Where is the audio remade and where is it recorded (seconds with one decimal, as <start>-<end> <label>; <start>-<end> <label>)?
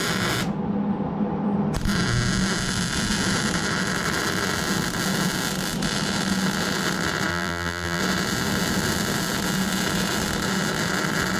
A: 0.0-7.3 recorded; 7.3-8.0 remade; 8.0-11.4 recorded